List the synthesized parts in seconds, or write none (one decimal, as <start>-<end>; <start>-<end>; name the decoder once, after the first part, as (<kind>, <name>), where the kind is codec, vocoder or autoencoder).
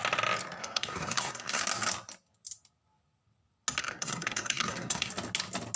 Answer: 0.6-1.6 (codec, SNAC); 3.8-5.1